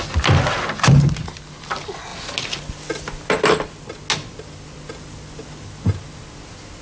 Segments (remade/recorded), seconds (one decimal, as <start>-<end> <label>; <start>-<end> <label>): 0.0-6.8 recorded